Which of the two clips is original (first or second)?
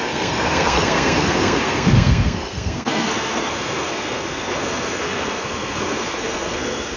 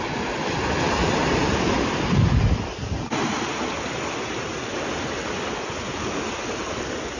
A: second